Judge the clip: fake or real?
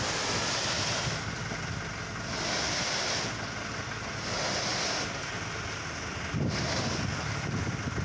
real